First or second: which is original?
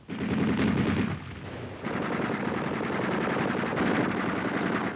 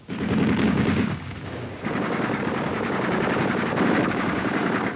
first